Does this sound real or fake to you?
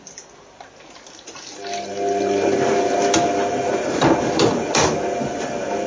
real